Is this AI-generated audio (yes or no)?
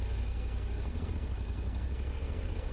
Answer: yes